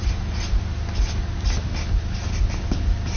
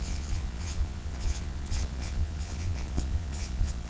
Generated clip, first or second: second